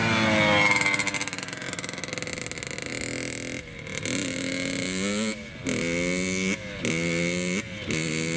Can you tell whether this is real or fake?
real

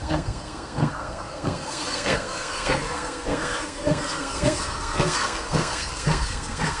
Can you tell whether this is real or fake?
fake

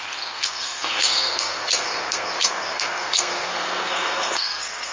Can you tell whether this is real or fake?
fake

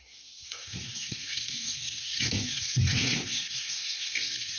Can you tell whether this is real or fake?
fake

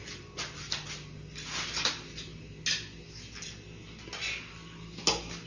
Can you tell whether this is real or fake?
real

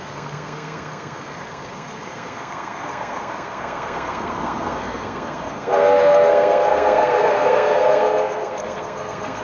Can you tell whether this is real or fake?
fake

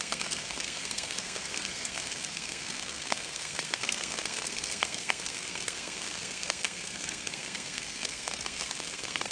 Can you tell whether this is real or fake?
fake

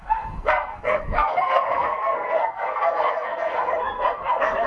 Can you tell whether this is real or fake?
fake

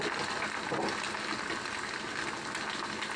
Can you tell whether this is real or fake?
real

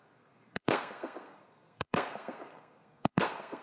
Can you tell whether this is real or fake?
fake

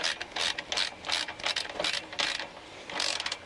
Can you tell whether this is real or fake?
real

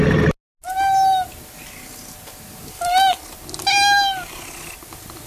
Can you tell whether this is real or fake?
real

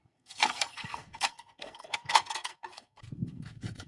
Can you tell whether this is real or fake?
fake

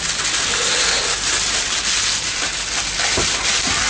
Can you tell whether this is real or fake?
real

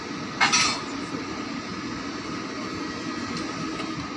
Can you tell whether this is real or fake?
real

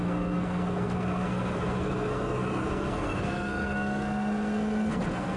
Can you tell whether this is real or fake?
fake